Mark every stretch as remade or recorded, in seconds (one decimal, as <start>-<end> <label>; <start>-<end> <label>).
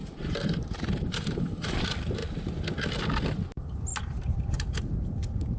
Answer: 0.0-1.8 remade; 1.8-3.9 recorded; 3.9-5.6 remade